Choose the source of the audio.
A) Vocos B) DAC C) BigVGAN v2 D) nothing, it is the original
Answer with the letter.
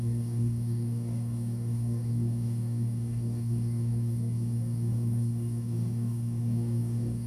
B